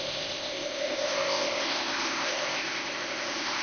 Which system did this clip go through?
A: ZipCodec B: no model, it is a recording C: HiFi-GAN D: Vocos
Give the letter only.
A